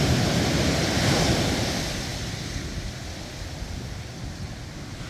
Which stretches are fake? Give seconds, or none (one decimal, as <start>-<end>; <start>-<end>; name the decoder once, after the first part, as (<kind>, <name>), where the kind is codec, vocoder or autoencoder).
none